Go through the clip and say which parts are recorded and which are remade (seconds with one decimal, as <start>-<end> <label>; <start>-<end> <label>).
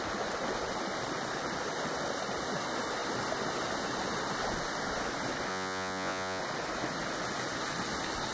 0.0-5.5 recorded; 5.5-6.4 remade; 6.4-8.3 recorded